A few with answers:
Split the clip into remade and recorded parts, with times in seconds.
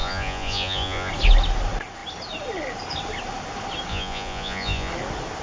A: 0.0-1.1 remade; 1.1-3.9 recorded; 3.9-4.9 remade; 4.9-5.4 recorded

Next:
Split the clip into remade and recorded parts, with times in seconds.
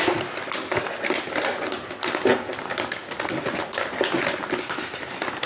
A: 0.0-5.5 recorded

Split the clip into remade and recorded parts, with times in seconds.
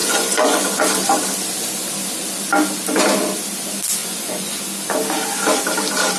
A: 0.0-0.8 remade; 0.8-4.0 recorded; 4.0-4.6 remade; 4.6-6.2 recorded